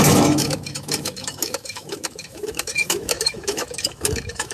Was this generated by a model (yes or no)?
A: yes